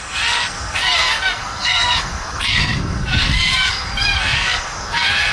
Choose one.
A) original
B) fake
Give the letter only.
B